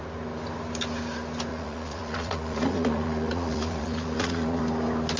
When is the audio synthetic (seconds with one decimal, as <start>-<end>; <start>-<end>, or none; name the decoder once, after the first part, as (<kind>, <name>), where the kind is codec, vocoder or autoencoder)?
1.5-4.6 (vocoder, Vocos)